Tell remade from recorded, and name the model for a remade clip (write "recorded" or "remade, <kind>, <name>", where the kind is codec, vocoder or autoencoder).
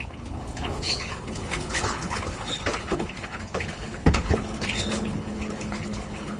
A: remade, codec, HILCodec